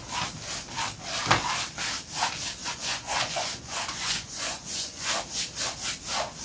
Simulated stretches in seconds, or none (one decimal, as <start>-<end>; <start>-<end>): 2.6-5.1